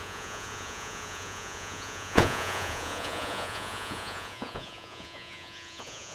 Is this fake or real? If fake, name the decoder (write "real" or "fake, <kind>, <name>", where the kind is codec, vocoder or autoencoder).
fake, vocoder, Vocos